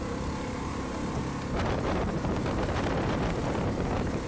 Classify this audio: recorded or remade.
remade